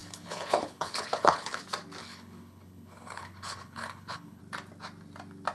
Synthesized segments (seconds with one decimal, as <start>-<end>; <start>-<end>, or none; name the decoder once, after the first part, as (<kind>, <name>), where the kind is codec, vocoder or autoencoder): 0.0-1.6 (codec, HILCodec); 2.0-4.4